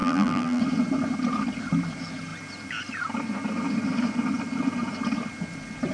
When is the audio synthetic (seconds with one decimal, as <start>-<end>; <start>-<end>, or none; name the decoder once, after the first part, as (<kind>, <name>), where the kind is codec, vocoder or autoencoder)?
0.0-0.6 (vocoder, BigVGAN v2)